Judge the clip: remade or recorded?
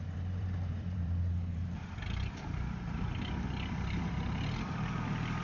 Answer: remade